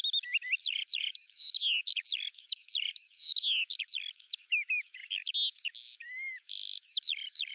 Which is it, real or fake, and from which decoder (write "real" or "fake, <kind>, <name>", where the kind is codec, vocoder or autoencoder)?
fake, autoencoder, DAC-VAE